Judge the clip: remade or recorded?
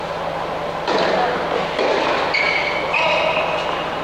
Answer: recorded